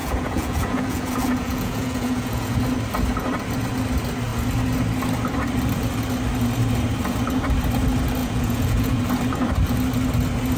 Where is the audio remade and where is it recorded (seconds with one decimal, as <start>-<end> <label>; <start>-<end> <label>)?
0.0-2.6 remade; 2.6-8.2 recorded; 8.2-9.0 remade; 9.0-10.6 recorded